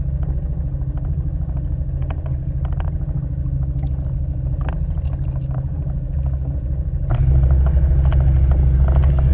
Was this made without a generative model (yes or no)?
yes